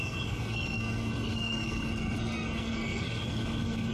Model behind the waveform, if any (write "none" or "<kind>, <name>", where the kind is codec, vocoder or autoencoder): codec, SNAC